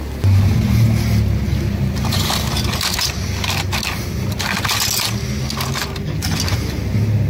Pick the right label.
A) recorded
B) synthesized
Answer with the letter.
A